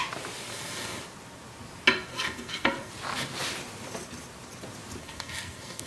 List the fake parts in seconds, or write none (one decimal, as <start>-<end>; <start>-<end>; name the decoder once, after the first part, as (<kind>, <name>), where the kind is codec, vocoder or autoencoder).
0.5-1.0 (codec, SNAC); 2.1-2.9; 5.0-5.9